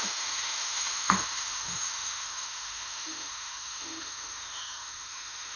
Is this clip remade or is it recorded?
remade